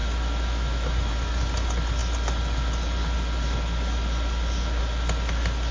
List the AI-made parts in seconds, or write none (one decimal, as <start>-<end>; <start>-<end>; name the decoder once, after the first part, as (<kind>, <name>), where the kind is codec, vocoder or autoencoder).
0.0-1.1 (autoencoder, DAC-VAE)